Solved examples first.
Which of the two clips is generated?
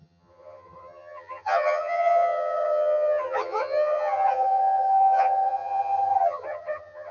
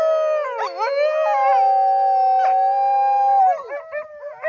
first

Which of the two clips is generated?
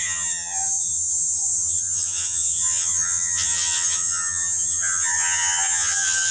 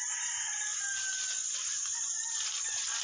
first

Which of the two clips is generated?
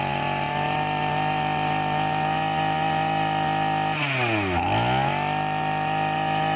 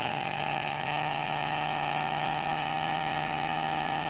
second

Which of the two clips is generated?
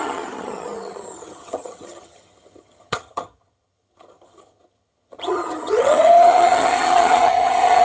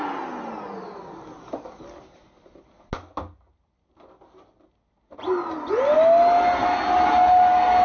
first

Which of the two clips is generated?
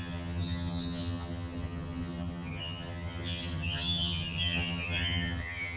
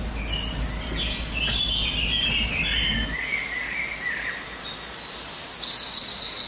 first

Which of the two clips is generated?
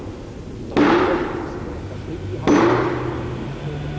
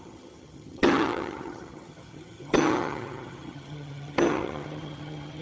second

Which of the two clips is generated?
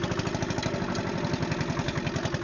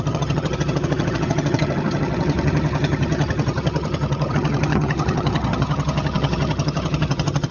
second